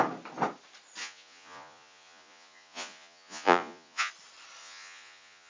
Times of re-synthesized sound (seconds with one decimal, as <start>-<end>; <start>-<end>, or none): 1.0-4.1; 4.6-5.5